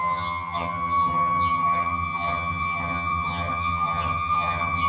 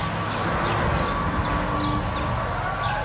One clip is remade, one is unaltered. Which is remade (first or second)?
first